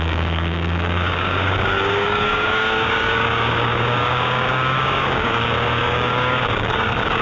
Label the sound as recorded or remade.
remade